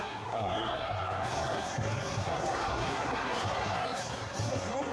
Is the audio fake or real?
fake